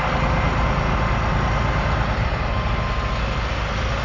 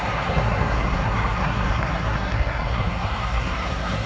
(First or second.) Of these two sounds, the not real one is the second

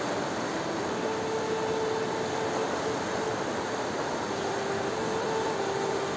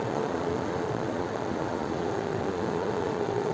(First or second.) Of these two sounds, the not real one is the second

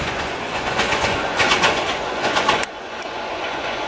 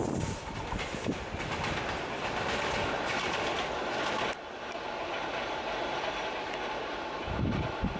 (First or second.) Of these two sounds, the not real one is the first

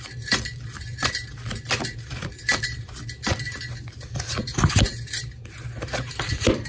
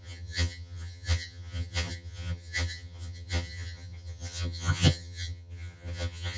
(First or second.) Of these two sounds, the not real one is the second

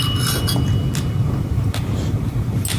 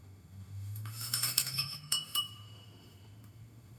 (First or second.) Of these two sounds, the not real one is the second